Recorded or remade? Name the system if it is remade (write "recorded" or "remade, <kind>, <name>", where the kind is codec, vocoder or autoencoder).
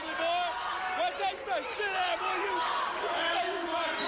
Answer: recorded